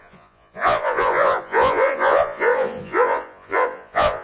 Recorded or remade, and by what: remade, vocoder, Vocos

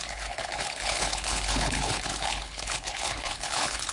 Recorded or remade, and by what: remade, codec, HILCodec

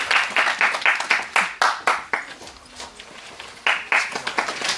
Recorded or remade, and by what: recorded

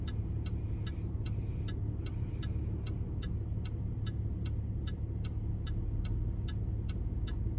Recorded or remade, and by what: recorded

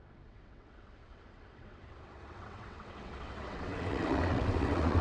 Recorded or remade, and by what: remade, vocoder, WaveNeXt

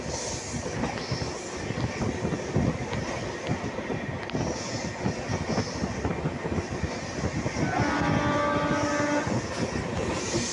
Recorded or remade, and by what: recorded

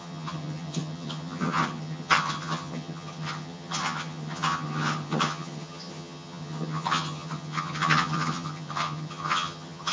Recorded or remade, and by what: remade, vocoder, HiFi-GAN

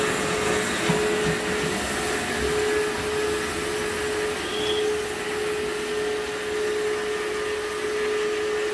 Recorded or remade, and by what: recorded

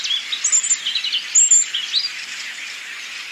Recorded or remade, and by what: recorded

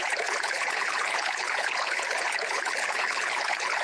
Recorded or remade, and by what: remade, codec, HILCodec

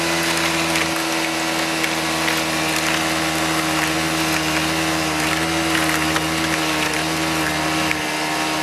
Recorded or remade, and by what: recorded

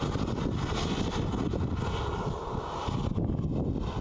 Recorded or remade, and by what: recorded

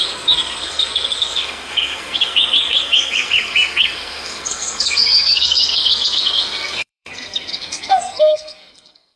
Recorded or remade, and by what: remade, codec, SNAC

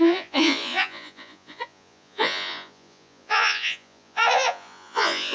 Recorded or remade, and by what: remade, vocoder, Vocos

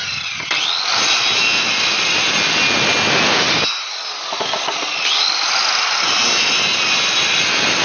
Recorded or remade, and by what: recorded